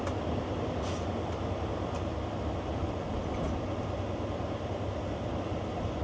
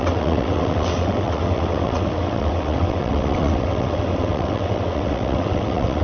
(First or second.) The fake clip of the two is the second